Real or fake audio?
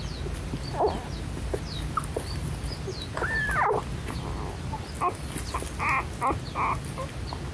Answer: real